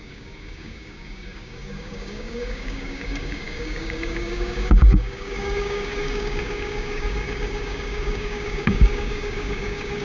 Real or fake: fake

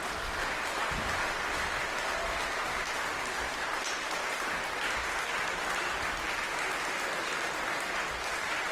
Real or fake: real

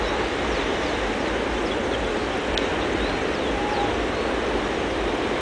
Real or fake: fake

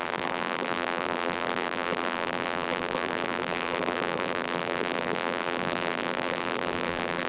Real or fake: fake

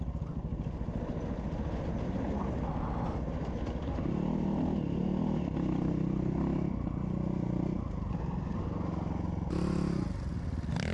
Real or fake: real